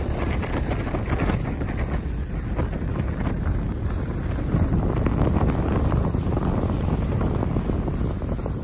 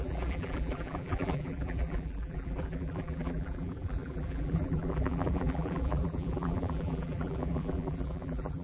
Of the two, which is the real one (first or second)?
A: first